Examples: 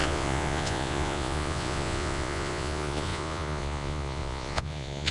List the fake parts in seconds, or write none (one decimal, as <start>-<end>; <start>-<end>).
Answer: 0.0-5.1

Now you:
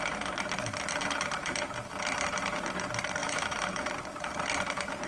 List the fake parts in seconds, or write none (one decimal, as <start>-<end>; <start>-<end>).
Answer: 3.2-3.9

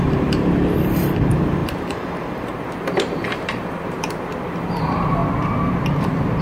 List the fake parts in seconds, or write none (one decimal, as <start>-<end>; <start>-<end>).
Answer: 0.0-5.2

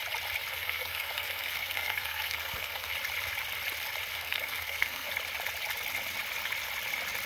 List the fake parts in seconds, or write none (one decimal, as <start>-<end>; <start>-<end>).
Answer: 0.5-2.9; 4.1-5.1

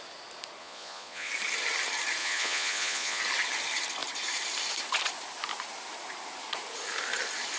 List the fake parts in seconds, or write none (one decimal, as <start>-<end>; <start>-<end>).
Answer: 0.6-1.3; 2.2-3.2